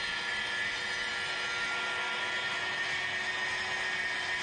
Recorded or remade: recorded